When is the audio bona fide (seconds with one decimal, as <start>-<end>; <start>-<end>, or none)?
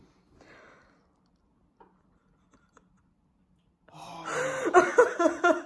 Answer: 0.0-5.7